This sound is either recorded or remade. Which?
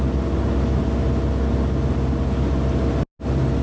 recorded